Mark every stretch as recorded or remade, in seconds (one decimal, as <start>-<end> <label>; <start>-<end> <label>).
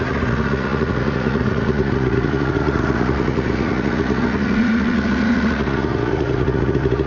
0.0-7.1 remade